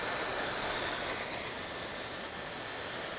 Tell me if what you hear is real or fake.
real